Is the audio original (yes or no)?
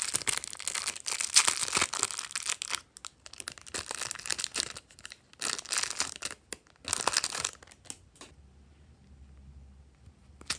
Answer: yes